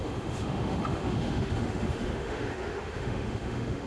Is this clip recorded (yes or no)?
no